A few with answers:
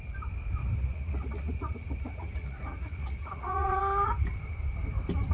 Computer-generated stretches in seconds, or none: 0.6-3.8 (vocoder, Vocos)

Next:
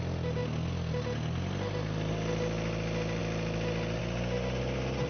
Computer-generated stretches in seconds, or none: none

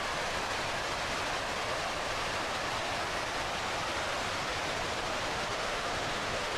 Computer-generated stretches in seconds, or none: 5.3-6.6 (autoencoder, DAC-VAE)

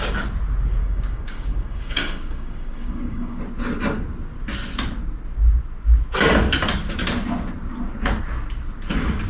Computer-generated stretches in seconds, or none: 0.8-3.4 (codec, DAC)

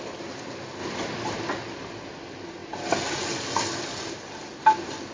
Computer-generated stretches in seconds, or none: none

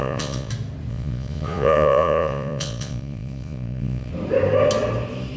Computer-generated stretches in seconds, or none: 0.0-0.5 (vocoder, Vocos); 0.9-4.1